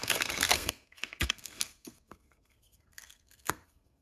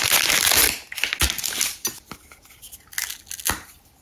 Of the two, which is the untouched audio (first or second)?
second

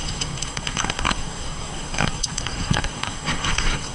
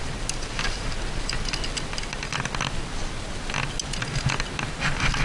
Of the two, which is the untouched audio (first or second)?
second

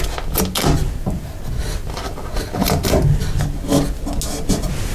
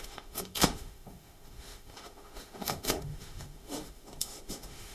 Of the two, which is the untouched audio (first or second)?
first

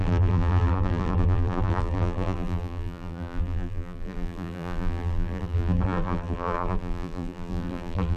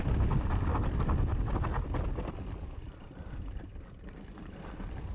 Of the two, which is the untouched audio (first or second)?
second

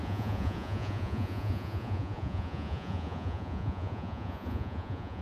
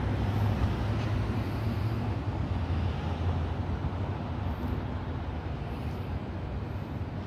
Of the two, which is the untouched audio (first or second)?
second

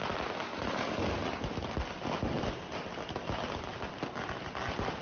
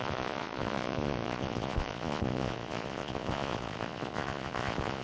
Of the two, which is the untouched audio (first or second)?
first